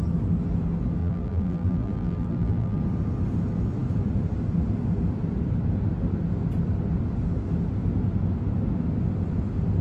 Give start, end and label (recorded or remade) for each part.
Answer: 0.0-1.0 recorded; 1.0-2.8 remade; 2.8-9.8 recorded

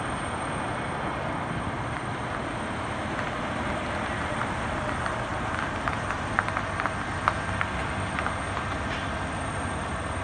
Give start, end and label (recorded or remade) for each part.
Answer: 0.0-7.8 remade; 7.8-8.7 recorded; 8.7-10.2 remade

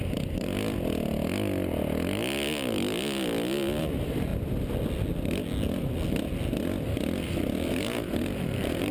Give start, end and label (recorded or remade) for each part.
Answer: 0.0-0.5 remade; 0.5-3.8 recorded; 3.8-4.3 remade; 4.3-7.7 recorded; 7.7-8.9 remade

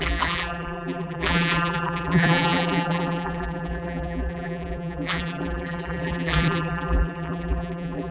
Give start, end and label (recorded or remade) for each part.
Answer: 0.0-8.1 remade